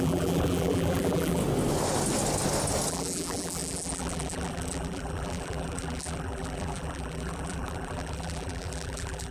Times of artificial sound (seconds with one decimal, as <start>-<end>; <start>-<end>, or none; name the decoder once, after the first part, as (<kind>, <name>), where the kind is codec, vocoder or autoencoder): 0.0-1.4 (vocoder, BigVGAN v2); 2.9-9.3